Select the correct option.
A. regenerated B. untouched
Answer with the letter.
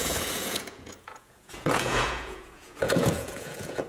A